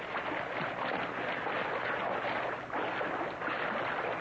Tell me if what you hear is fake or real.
real